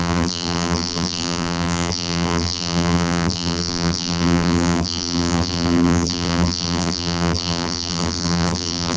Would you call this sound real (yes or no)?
no